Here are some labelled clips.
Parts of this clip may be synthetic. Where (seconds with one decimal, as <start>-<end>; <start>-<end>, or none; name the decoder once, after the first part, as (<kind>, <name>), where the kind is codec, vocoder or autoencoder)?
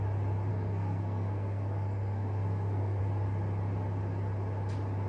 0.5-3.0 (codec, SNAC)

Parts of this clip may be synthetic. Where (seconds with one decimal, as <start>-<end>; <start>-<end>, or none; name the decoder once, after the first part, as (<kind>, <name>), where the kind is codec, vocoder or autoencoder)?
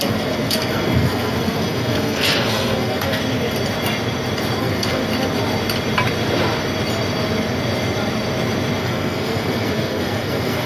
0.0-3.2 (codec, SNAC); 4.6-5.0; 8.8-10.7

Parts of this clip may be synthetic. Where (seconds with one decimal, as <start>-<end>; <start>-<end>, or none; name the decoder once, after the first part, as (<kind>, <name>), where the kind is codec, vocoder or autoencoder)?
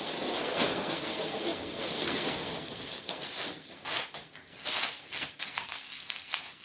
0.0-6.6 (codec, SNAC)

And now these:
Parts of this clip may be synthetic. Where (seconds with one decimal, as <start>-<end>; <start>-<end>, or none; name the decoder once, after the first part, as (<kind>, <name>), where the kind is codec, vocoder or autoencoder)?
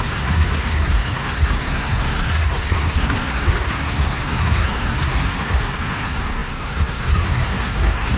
0.0-8.2 (codec, SNAC)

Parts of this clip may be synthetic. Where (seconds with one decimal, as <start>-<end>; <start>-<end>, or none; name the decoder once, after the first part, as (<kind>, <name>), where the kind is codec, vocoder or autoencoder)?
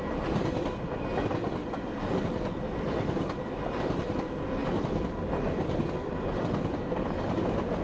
none